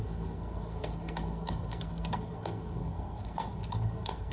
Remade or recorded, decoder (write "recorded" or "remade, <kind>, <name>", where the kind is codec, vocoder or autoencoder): remade, codec, SNAC